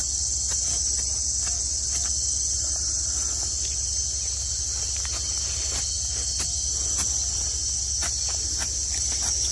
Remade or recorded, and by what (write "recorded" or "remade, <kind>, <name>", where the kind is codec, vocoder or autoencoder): recorded